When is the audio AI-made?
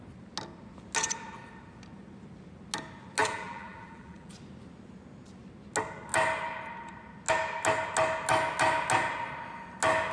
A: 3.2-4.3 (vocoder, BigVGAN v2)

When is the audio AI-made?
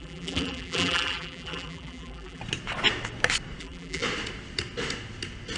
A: 0.0-2.4 (vocoder, BigVGAN v2); 3.6-4.0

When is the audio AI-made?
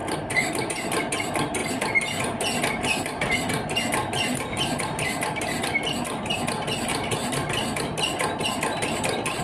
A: 6.9-9.4 (vocoder, BigVGAN v2)